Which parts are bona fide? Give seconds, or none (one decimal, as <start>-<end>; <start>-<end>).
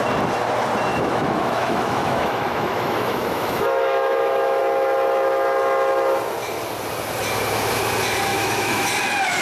0.0-0.9; 4.6-8.3; 8.9-9.4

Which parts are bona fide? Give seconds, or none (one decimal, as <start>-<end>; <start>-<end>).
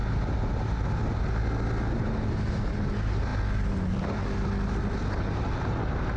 0.0-6.2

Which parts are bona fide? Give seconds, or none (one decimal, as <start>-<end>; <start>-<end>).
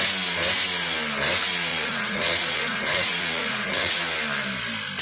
0.0-1.7; 4.0-5.0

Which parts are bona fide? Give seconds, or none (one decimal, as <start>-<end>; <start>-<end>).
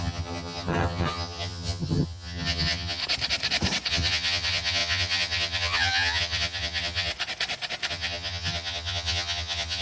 3.0-3.9; 7.1-7.9